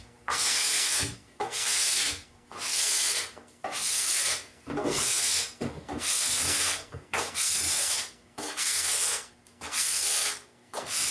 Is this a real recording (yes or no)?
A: no